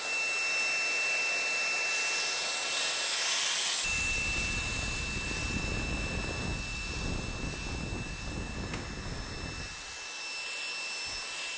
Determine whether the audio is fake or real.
real